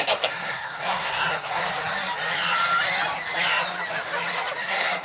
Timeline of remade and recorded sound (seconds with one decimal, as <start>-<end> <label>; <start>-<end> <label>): 0.0-1.6 remade; 1.6-4.6 recorded; 4.6-5.0 remade